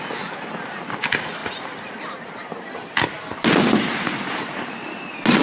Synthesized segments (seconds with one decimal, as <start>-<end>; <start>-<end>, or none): 1.4-4.6